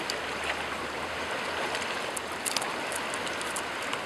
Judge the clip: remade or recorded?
recorded